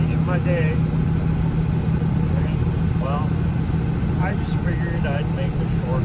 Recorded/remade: recorded